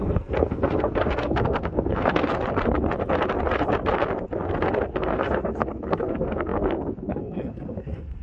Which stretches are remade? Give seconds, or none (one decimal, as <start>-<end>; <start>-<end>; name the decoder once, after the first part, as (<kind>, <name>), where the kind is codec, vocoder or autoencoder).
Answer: 0.0-2.3 (codec, SNAC); 4.9-8.2